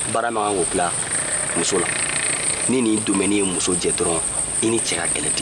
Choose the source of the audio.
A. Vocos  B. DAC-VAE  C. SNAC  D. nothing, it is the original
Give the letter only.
D